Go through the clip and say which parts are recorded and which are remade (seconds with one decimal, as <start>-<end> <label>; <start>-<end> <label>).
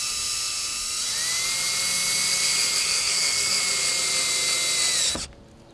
0.0-2.8 recorded; 2.8-3.6 remade; 3.6-5.7 recorded